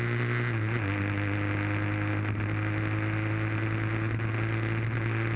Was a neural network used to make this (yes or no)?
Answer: no